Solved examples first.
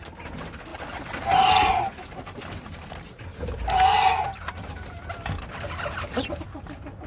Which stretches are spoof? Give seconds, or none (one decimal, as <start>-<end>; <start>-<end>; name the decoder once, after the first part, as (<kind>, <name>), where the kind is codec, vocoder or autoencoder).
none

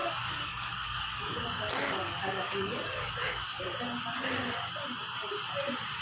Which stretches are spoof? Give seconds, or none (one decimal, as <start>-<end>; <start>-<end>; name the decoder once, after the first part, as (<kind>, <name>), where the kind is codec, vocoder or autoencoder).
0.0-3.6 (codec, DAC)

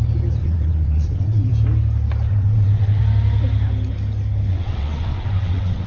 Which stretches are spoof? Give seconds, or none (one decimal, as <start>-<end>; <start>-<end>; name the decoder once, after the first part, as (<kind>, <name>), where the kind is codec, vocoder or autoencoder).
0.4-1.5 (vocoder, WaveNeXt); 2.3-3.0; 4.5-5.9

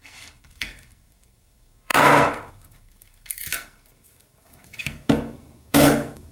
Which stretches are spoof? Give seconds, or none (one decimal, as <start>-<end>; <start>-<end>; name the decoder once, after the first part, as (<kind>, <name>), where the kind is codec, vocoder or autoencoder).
0.0-6.3 (codec, SNAC)

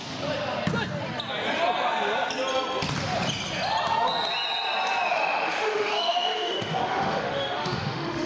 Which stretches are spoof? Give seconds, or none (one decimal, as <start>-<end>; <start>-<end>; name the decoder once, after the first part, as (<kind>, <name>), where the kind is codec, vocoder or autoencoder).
5.1-8.3 (autoencoder, DAC-VAE)

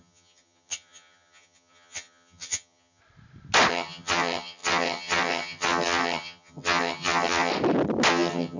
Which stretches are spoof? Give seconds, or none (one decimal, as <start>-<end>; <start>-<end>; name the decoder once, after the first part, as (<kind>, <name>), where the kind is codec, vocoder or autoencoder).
0.0-3.0 (vocoder, HiFi-GAN); 3.7-7.5; 8.1-8.6